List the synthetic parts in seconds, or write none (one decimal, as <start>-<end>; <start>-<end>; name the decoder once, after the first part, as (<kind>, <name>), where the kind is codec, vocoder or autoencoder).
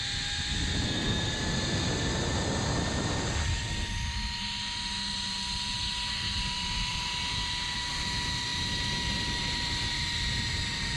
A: none